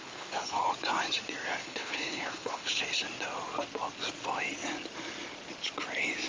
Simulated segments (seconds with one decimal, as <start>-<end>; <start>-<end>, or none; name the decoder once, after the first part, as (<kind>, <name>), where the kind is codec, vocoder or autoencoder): 0.0-0.7 (codec, HILCodec); 1.6-2.8